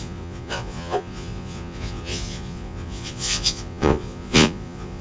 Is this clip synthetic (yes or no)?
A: yes